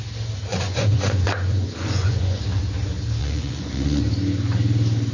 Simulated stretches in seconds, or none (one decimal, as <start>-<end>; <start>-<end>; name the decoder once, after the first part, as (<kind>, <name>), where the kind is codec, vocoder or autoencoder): 0.5-2.4 (vocoder, Vocos); 3.2-4.0